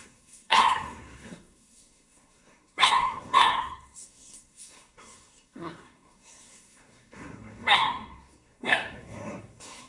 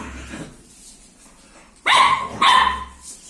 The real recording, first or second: second